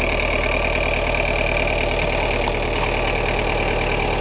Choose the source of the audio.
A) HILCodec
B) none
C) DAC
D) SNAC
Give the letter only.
B